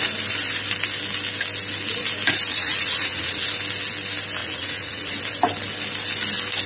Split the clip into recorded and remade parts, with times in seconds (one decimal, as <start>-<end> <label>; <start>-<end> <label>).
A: 0.0-2.5 recorded; 2.5-3.5 remade; 3.5-4.4 recorded; 4.4-5.2 remade; 5.2-6.7 recorded